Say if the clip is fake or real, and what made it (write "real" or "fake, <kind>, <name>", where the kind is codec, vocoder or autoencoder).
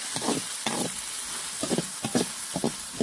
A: real